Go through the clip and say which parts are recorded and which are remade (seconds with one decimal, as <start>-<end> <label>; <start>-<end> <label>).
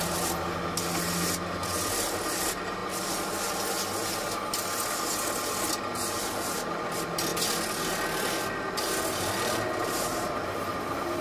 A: 0.0-11.2 recorded